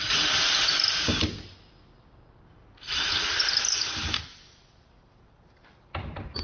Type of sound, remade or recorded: recorded